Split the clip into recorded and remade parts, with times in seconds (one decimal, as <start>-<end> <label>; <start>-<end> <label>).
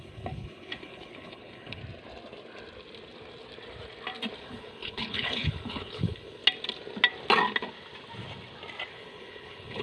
0.0-1.8 remade; 1.8-4.4 recorded; 4.4-6.4 remade; 6.4-8.9 recorded; 8.9-9.8 remade